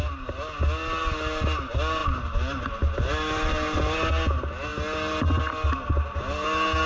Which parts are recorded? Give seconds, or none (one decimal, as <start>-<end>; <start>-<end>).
0.0-6.9